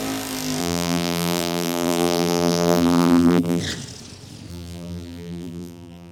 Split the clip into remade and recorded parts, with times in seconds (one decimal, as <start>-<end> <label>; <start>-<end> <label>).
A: 0.0-0.6 recorded; 0.6-3.6 remade; 3.6-4.5 recorded; 4.5-6.1 remade